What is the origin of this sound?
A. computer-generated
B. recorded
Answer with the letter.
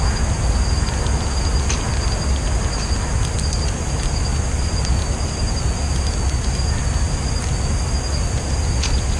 B